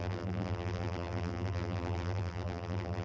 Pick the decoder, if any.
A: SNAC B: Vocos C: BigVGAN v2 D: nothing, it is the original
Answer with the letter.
C